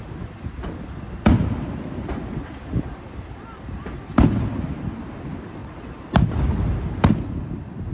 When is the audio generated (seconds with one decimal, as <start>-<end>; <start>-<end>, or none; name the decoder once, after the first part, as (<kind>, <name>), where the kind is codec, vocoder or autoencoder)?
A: none